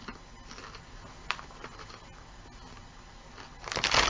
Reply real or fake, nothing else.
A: real